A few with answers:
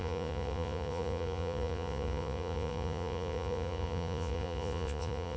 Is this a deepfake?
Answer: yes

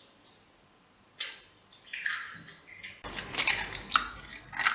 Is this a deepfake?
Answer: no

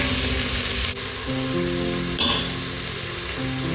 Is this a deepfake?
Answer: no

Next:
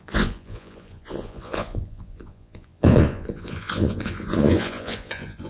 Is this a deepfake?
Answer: yes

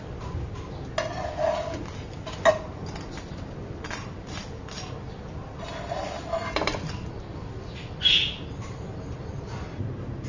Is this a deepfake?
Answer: no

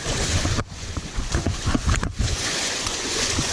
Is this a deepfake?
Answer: yes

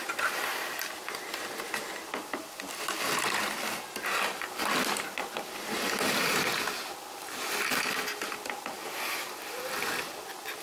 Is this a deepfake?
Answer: no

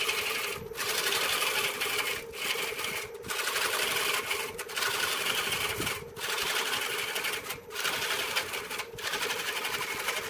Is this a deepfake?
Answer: no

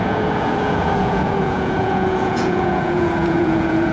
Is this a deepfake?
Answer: yes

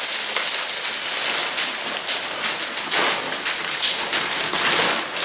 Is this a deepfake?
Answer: no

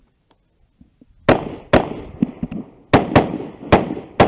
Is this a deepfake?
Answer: no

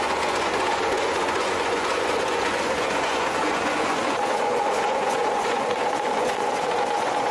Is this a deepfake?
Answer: yes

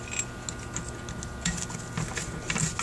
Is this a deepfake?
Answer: no